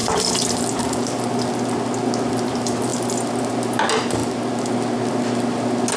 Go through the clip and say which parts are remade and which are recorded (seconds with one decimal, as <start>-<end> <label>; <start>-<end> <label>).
0.0-6.0 recorded